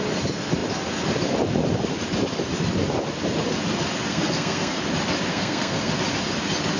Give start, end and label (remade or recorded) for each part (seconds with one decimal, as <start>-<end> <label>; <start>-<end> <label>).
0.0-4.1 recorded; 4.1-4.8 remade; 4.8-5.3 recorded; 5.3-5.9 remade; 5.9-6.8 recorded